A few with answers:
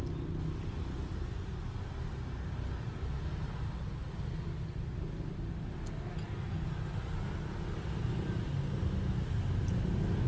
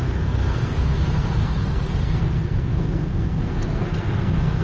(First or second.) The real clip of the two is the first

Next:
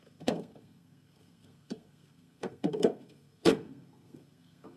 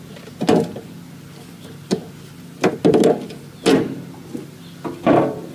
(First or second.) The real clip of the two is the second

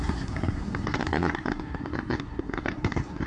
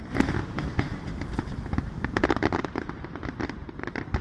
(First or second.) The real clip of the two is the second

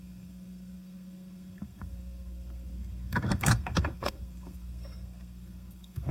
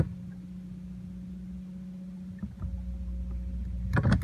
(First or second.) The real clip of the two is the second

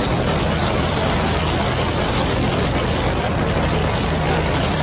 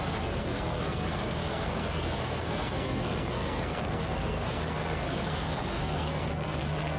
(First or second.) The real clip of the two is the first